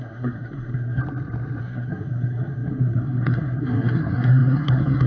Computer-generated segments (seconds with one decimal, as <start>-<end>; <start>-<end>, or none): 0.0-1.0; 1.6-5.1